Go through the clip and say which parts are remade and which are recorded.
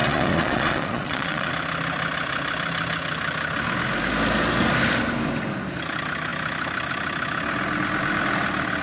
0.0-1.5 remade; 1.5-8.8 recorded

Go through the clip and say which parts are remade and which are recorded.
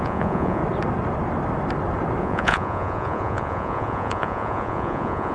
0.0-0.6 remade; 0.6-2.2 recorded; 2.2-5.3 remade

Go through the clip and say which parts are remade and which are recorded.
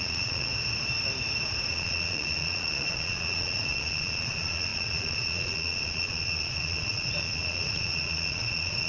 0.0-0.5 remade; 0.5-1.7 recorded; 1.7-8.9 remade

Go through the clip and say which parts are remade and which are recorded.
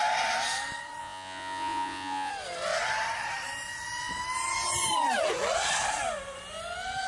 0.0-1.0 recorded; 1.0-2.3 remade; 2.3-7.1 recorded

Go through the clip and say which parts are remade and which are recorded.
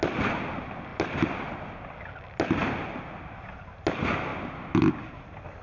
0.0-5.6 recorded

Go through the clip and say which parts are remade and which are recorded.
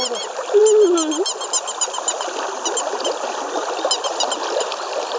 0.0-5.2 recorded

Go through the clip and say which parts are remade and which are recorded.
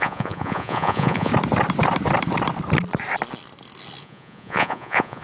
0.0-1.3 remade; 1.3-4.0 recorded; 4.0-5.2 remade